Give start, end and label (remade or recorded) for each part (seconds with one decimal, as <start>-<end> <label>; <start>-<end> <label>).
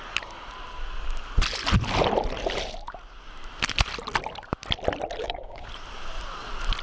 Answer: 0.0-5.2 recorded; 5.2-5.7 remade; 5.7-6.8 recorded